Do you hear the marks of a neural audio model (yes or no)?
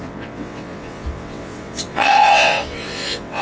yes